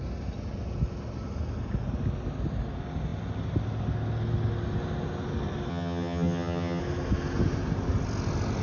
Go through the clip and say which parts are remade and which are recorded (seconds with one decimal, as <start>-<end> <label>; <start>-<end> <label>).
0.0-5.7 recorded; 5.7-6.8 remade; 6.8-8.6 recorded